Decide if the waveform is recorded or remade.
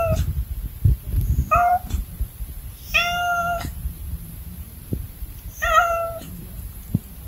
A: remade